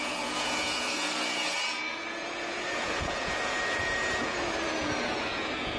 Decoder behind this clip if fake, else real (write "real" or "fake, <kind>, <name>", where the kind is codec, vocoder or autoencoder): fake, vocoder, Vocos